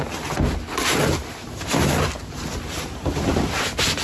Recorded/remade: recorded